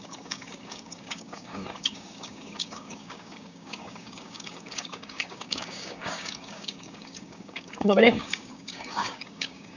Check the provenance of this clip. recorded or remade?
remade